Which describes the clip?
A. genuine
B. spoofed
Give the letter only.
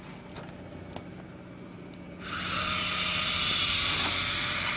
A